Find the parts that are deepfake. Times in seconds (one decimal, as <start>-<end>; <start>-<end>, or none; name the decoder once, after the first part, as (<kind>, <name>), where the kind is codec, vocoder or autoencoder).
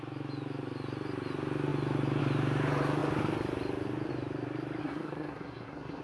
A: 4.8-6.0 (codec, SNAC)